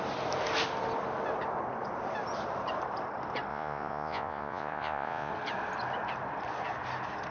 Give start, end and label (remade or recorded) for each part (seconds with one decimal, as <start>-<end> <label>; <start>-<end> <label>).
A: 0.0-3.5 recorded; 3.5-5.3 remade; 5.3-7.3 recorded